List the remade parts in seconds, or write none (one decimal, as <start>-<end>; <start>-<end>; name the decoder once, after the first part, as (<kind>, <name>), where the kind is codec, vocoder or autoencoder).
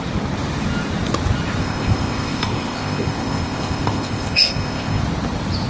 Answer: 1.6-5.0 (codec, ZipCodec)